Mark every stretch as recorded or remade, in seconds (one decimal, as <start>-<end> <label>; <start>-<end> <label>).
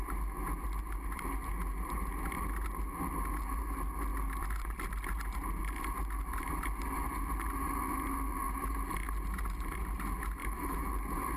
0.0-10.4 recorded; 10.4-10.9 remade; 10.9-11.4 recorded